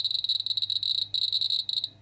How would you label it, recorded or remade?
recorded